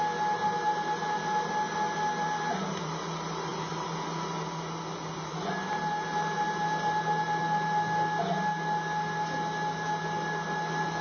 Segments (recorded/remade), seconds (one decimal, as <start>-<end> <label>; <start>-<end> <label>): 0.0-11.0 recorded